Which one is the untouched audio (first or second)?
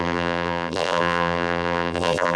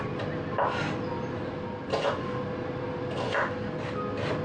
second